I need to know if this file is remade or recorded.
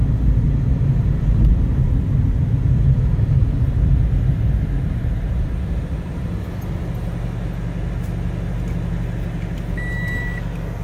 recorded